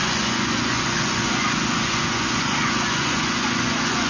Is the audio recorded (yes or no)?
no